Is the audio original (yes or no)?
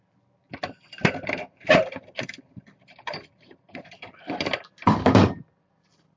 yes